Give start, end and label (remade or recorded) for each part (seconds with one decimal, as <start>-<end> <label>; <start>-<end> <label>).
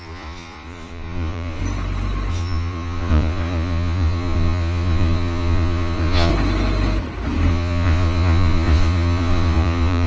0.0-1.6 remade; 1.6-2.3 recorded; 2.3-6.3 remade; 6.3-7.5 recorded; 7.5-10.1 remade